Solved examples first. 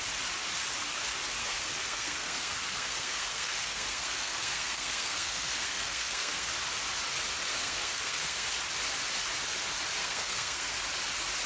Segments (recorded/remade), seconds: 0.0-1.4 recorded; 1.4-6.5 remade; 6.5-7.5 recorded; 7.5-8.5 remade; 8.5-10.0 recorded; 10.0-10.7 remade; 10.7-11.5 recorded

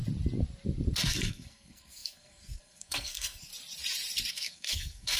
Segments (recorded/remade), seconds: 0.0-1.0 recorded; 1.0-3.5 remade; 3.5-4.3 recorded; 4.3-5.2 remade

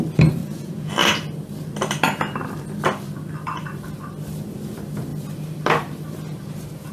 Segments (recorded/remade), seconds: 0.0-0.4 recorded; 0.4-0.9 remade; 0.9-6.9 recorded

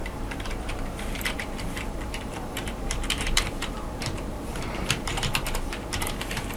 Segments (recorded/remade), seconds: 0.0-6.6 remade

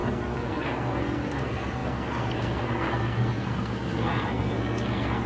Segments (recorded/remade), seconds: 0.0-5.3 remade

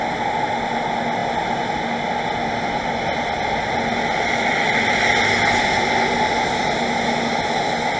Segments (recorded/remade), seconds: 0.0-8.0 recorded

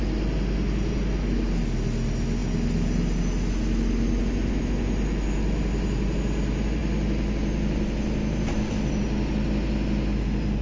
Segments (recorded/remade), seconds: 0.0-10.6 recorded